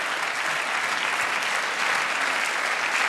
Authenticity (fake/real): real